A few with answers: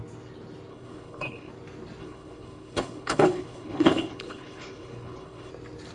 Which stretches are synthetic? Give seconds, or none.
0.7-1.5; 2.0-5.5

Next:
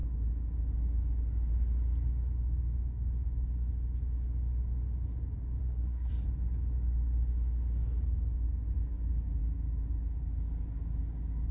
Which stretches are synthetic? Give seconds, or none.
5.6-6.1

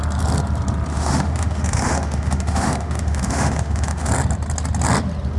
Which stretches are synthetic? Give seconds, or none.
0.9-4.1

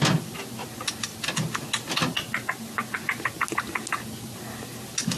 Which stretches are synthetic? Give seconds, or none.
none

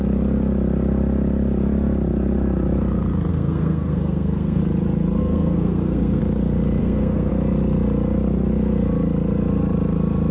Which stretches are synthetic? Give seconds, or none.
3.3-4.6; 5.2-6.2; 6.8-7.3

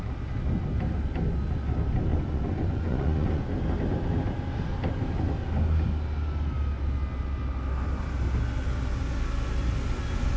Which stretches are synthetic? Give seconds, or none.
2.1-3.4